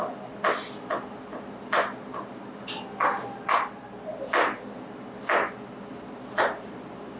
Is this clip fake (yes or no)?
no